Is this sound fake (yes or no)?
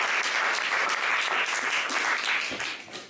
no